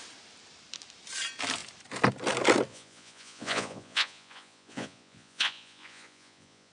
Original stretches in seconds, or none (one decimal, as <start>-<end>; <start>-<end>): 0.0-2.7